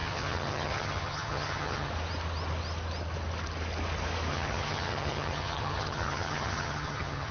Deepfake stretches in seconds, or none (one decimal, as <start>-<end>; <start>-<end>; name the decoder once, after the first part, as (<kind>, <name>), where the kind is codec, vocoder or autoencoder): 0.0-1.9 (vocoder, HiFi-GAN); 4.3-7.3